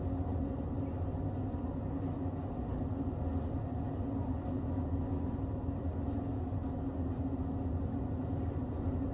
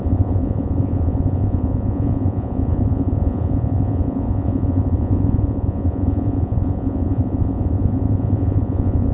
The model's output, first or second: second